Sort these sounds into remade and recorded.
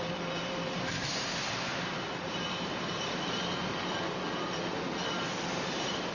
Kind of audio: remade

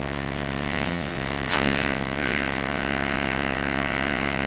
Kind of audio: remade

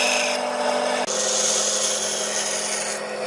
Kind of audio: recorded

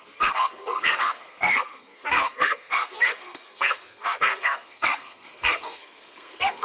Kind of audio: remade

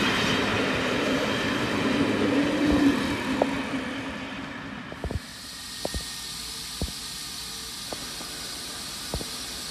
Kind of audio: recorded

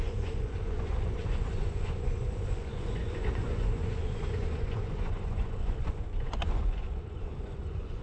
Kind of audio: remade